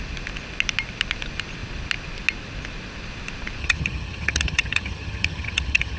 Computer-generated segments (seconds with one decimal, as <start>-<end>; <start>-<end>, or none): 3.6-6.0